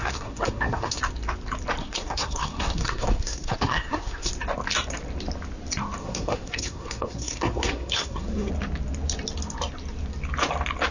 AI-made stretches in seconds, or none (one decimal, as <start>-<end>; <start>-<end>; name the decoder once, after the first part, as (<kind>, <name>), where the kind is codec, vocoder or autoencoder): 0.0-1.0 (codec, SNAC); 1.8-4.3; 6.0-8.5